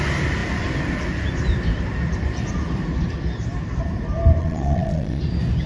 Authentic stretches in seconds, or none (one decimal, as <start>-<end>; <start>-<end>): 0.0-4.4; 5.2-5.7

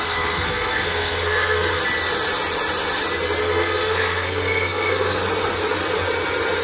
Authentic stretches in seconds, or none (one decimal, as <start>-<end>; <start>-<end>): 1.8-3.4; 5.2-6.6